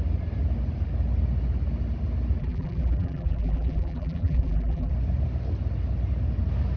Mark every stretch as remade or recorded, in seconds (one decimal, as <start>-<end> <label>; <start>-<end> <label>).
0.0-2.4 recorded; 2.4-4.9 remade; 4.9-6.8 recorded

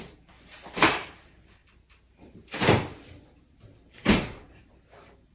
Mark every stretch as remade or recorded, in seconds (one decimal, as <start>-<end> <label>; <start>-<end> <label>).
0.0-5.3 remade

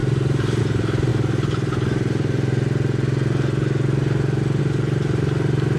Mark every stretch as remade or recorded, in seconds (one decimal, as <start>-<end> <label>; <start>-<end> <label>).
0.0-1.1 remade; 1.1-4.6 recorded; 4.6-5.8 remade

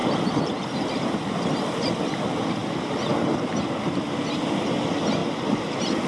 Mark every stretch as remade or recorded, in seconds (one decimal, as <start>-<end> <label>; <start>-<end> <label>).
0.0-2.1 remade; 2.1-5.2 recorded; 5.2-6.1 remade

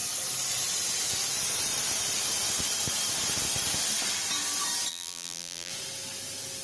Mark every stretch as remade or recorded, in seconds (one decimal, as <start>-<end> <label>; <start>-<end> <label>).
0.0-4.9 recorded; 4.9-5.7 remade; 5.7-6.6 recorded